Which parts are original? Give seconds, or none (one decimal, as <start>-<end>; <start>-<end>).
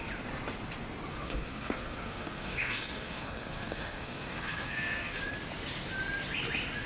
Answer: 0.0-1.1; 5.2-6.9